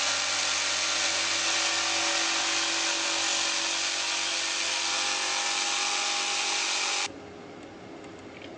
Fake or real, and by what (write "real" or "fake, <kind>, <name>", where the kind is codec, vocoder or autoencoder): real